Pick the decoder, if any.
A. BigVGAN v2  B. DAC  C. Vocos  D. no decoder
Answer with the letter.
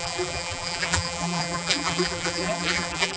A